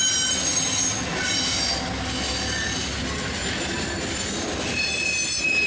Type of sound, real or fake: real